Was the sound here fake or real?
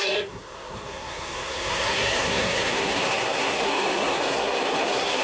fake